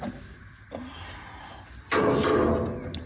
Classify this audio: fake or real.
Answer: real